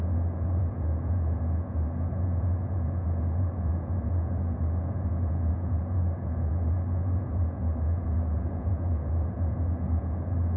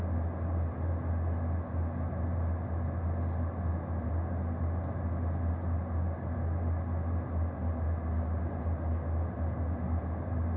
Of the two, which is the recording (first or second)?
second